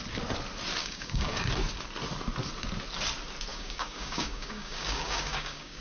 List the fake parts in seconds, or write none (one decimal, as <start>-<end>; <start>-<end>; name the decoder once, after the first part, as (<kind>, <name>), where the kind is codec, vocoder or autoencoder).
0.8-1.5 (codec, DAC); 3.5-5.8